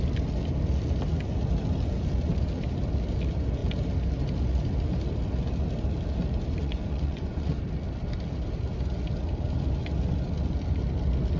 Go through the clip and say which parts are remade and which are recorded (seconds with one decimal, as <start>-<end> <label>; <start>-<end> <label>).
0.0-6.6 recorded; 6.6-7.6 remade; 7.6-11.4 recorded